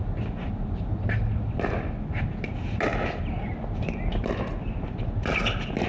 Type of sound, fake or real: real